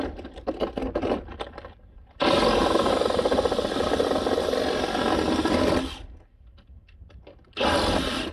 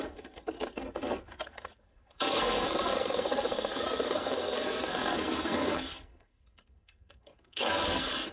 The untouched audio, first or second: first